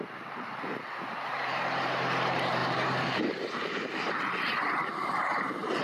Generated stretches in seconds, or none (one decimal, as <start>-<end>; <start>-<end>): 0.0-0.5; 1.1-5.8